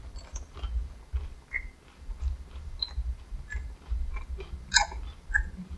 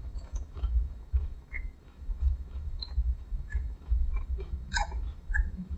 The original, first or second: first